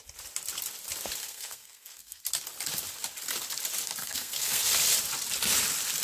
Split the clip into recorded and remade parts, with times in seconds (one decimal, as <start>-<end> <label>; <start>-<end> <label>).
0.0-1.2 recorded; 1.2-2.2 remade; 2.2-4.0 recorded; 4.0-4.7 remade; 4.7-6.0 recorded